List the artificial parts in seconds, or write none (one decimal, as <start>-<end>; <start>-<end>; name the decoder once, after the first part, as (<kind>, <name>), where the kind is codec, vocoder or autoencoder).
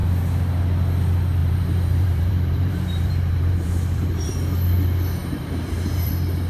1.4-4.3 (vocoder, BigVGAN v2); 5.2-6.1